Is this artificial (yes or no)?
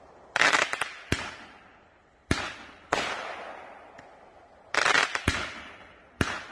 no